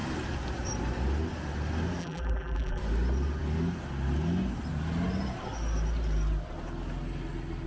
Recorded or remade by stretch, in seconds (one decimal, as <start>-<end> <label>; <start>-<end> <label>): 0.0-2.0 recorded; 2.0-2.8 remade; 2.8-7.7 recorded